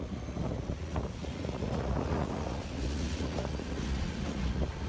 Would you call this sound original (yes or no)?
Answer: no